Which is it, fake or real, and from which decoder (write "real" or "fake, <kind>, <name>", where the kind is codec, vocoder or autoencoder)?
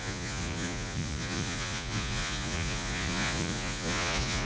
fake, vocoder, Vocos